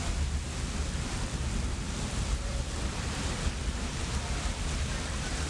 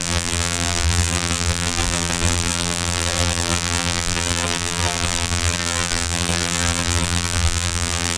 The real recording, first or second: first